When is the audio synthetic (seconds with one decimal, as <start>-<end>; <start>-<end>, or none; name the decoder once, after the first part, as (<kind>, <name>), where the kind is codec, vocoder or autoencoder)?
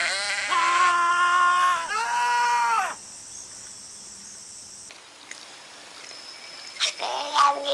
none